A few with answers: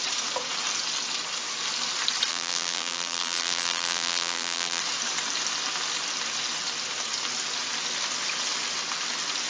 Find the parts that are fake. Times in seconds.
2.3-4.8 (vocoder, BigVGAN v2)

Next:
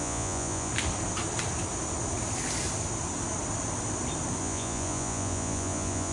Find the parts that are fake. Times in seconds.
0.0-0.7 (vocoder, Vocos); 4.4-6.1

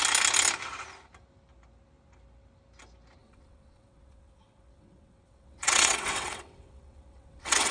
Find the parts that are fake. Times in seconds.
3.2-7.7 (vocoder, WaveNeXt)

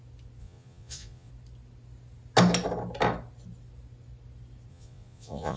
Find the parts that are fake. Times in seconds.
0.4-1.3 (vocoder, Vocos); 4.7-5.6

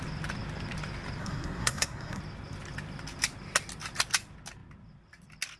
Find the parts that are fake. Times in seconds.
1.2-2.2 (codec, SNAC)

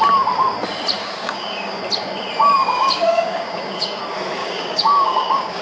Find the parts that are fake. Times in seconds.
1.0-1.8 (codec, DAC); 2.6-4.0; 4.4-5.6

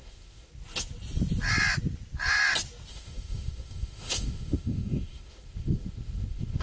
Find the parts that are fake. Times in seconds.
0.0-0.5 (autoencoder, DAC-VAE); 2.9-6.6